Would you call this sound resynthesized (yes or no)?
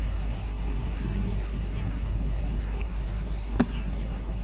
yes